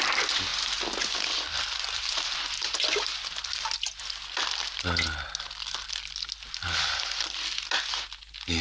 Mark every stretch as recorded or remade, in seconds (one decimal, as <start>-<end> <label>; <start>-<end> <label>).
0.0-8.6 recorded